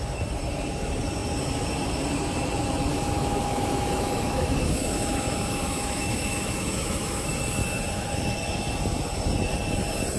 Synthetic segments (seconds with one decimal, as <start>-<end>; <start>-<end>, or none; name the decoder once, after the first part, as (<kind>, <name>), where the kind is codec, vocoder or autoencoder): 2.9-7.3 (autoencoder, DAC-VAE)